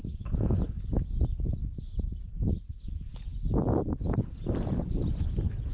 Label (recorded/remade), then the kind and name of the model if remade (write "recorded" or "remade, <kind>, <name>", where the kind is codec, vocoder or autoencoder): recorded